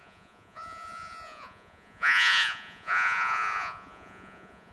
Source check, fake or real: fake